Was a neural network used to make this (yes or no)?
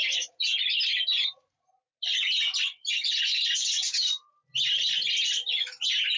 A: no